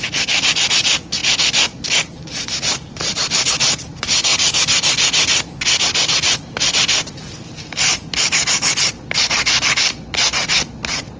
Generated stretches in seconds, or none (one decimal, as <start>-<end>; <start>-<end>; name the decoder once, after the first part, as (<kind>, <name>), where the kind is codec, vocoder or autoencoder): none